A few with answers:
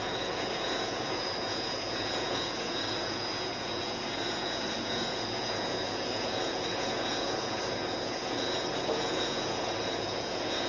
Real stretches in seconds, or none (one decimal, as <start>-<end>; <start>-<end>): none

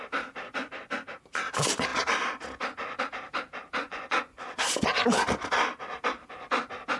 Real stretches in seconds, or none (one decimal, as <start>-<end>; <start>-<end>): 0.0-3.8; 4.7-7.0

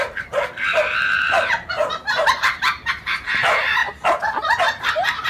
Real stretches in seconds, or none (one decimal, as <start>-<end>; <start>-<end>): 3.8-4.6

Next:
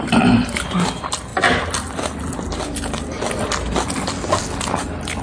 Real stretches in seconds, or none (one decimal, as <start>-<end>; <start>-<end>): 0.0-5.2

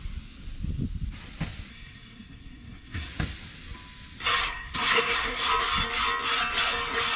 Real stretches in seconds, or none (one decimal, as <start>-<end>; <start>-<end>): 0.0-1.7; 3.1-4.4; 5.5-7.2